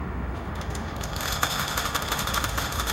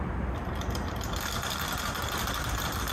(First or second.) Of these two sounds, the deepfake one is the first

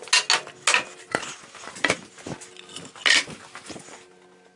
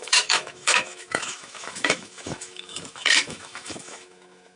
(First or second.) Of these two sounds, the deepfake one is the second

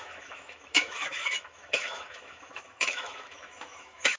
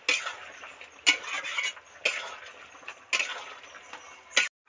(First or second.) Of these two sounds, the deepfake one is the first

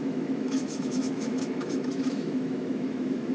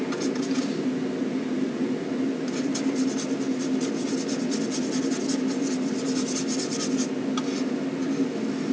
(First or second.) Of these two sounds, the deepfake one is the first